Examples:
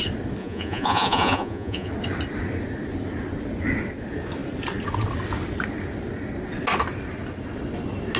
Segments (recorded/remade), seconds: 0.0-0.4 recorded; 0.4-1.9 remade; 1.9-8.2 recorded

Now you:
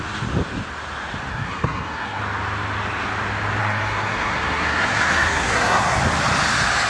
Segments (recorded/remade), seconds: 0.0-1.3 recorded; 1.3-2.2 remade; 2.2-3.6 recorded; 3.6-6.0 remade; 6.0-6.9 recorded

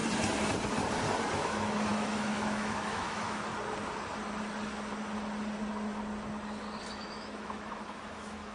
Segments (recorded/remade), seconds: 0.0-1.4 recorded; 1.4-3.5 remade; 3.5-6.8 recorded; 6.8-8.5 remade

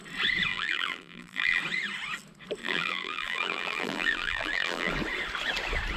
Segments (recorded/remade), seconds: 0.0-0.5 recorded; 0.5-1.6 remade; 1.6-2.6 recorded; 2.6-4.9 remade; 4.9-6.0 recorded

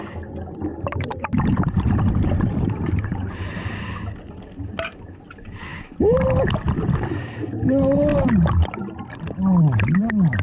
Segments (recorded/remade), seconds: 0.0-0.7 recorded; 0.7-3.6 remade; 3.6-10.4 recorded

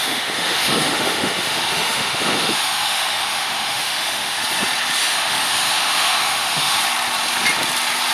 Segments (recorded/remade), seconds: 0.0-4.4 remade; 4.4-5.0 recorded; 5.0-6.8 remade; 6.8-8.1 recorded

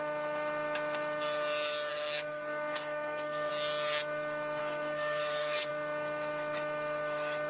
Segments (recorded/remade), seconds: 0.0-1.9 recorded; 1.9-3.5 remade; 3.5-4.6 recorded; 4.6-5.7 remade; 5.7-7.5 recorded